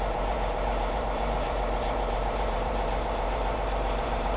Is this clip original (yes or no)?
no